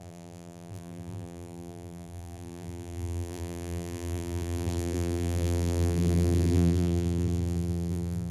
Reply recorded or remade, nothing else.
remade